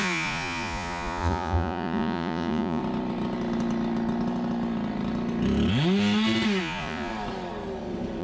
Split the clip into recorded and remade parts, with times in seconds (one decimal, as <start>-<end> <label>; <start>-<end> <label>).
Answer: 0.0-2.8 remade; 2.8-6.6 recorded; 6.6-7.1 remade; 7.1-8.2 recorded